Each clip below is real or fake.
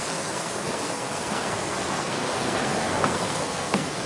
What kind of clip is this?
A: fake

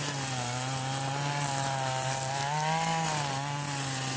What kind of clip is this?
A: real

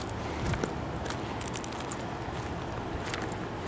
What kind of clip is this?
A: real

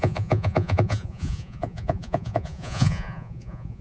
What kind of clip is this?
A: fake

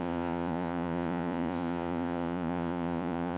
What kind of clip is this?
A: fake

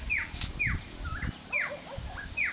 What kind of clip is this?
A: real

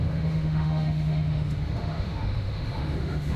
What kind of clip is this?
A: fake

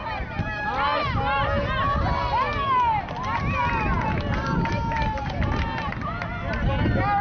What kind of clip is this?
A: real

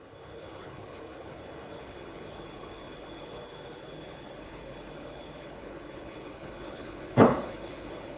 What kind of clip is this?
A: fake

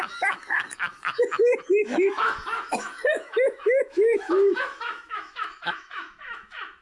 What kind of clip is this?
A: fake